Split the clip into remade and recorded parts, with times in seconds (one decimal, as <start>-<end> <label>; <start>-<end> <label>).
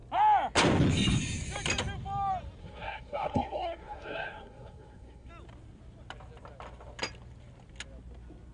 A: 0.0-2.6 recorded; 2.6-5.3 remade; 5.3-8.5 recorded